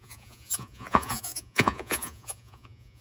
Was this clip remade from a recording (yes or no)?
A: yes